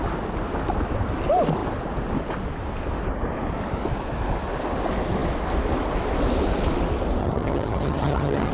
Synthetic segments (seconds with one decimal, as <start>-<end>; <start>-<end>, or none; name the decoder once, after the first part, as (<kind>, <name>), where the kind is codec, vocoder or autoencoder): 7.2-8.5 (vocoder, HiFi-GAN)